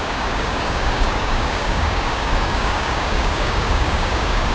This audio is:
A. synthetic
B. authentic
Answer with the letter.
A